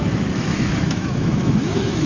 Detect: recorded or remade remade